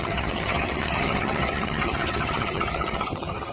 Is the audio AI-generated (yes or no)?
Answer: yes